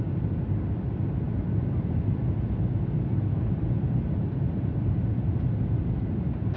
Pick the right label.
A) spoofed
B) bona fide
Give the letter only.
B